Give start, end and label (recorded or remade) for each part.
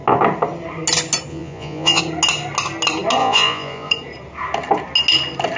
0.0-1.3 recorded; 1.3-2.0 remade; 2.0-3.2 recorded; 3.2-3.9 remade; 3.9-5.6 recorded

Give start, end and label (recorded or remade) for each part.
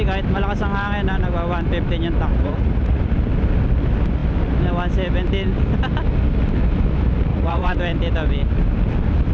0.0-2.3 recorded; 2.3-3.0 remade; 3.0-7.3 recorded; 7.3-7.8 remade; 7.8-9.3 recorded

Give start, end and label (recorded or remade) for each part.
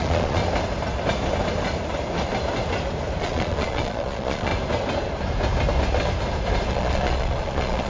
0.0-0.4 remade; 0.4-3.2 recorded; 3.2-4.5 remade; 4.5-6.7 recorded; 6.7-7.9 remade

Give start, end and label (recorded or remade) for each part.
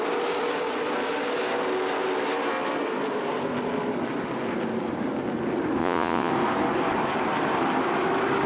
0.0-5.8 recorded; 5.8-6.3 remade; 6.3-8.5 recorded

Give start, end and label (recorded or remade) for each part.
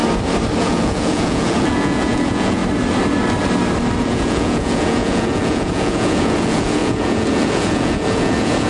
0.0-0.6 recorded; 0.6-2.6 remade; 2.6-4.0 recorded; 4.0-8.7 remade